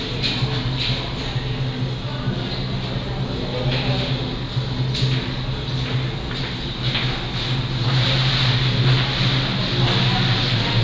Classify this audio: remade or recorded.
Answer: recorded